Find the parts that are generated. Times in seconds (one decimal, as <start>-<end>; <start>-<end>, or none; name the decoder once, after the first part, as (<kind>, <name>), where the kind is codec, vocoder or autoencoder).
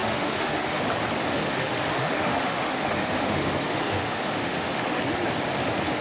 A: 0.0-0.8 (autoencoder, DAC-VAE); 1.4-5.0